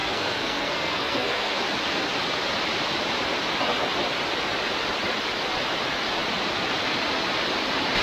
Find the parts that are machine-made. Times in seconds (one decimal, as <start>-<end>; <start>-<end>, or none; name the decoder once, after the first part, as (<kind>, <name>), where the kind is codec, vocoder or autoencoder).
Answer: 0.0-1.6 (codec, SNAC)